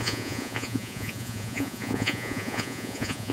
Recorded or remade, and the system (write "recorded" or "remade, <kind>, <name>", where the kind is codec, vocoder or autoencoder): remade, vocoder, Vocos